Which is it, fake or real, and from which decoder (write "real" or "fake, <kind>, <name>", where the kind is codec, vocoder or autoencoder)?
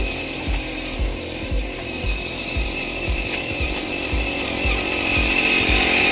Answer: fake, vocoder, BigVGAN v2